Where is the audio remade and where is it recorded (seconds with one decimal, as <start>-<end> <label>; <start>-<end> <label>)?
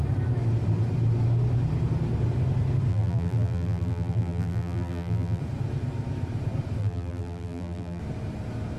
0.0-2.9 recorded; 2.9-5.4 remade; 5.4-6.8 recorded; 6.8-8.0 remade; 8.0-8.8 recorded